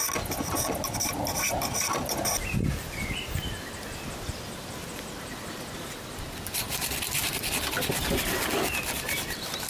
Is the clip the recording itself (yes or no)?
yes